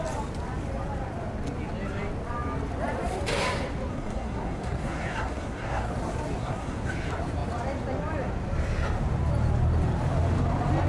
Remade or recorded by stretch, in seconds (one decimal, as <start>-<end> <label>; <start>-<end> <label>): 0.0-3.9 recorded; 3.9-5.9 remade; 5.9-6.4 recorded; 6.4-6.9 remade; 6.9-10.9 recorded